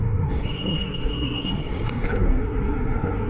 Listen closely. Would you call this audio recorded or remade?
remade